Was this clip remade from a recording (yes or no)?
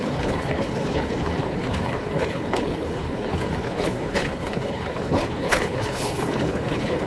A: yes